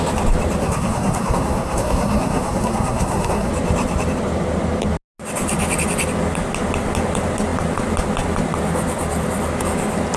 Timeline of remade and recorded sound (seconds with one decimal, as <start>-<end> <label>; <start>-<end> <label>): 0.0-0.6 recorded; 0.6-3.5 remade; 3.5-10.2 recorded

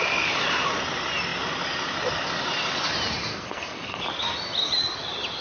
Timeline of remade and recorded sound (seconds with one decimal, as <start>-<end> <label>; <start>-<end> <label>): 0.0-3.3 recorded; 3.3-4.0 remade; 4.0-5.4 recorded

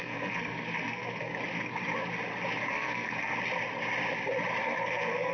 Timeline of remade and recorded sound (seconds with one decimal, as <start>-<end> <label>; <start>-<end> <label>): 0.0-1.3 remade; 1.3-2.7 recorded; 2.7-3.3 remade; 3.3-4.6 recorded; 4.6-5.3 remade

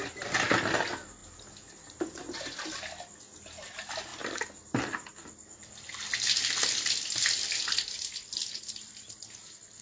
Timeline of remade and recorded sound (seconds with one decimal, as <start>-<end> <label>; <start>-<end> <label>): 0.0-9.8 recorded

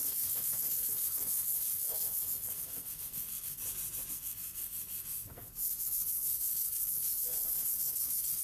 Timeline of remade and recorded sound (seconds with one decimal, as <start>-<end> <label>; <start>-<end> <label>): 0.0-3.6 remade; 3.6-4.1 recorded; 4.1-8.4 remade

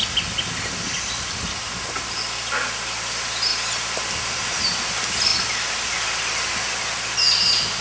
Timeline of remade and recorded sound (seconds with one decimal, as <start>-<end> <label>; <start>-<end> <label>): 0.0-7.8 recorded

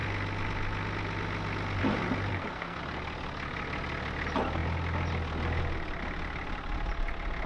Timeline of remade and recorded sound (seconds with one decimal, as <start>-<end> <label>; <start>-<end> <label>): 0.0-2.3 recorded; 2.3-2.8 remade; 2.8-7.5 recorded